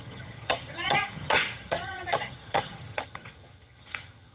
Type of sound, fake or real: fake